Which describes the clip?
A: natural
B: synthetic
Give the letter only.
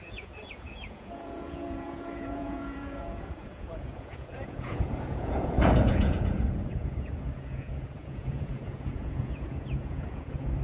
B